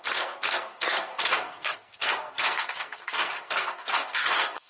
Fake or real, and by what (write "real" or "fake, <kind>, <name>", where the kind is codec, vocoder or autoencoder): fake, codec, SNAC